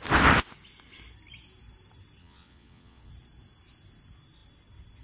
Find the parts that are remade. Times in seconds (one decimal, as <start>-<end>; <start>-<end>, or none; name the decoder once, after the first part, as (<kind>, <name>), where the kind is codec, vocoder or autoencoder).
2.2-3.1 (vocoder, WaveNeXt)